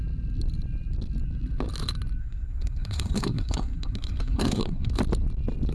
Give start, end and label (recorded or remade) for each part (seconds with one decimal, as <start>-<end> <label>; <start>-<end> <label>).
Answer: 0.0-2.2 recorded; 2.2-4.9 remade; 4.9-5.7 recorded